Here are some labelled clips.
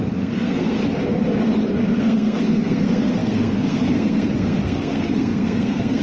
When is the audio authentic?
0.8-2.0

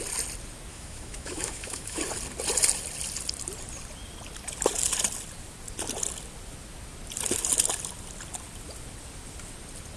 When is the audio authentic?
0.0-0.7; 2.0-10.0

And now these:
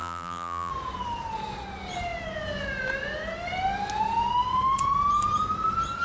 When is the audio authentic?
0.7-6.0

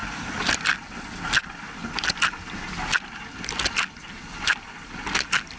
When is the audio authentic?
0.0-5.6